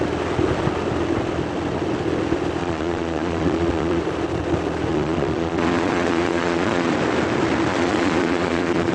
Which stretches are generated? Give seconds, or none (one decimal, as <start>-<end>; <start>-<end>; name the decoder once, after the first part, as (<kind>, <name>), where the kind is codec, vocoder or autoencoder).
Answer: 2.6-4.0 (vocoder, Vocos); 4.9-6.9; 7.7-8.9